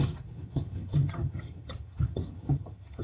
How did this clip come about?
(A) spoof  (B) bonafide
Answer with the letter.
A